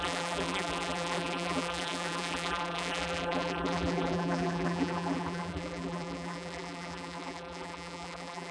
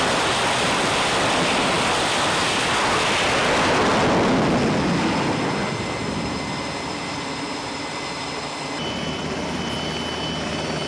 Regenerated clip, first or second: first